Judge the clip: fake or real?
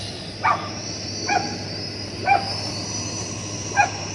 real